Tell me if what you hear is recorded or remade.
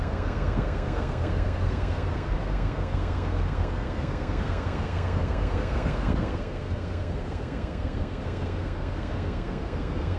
remade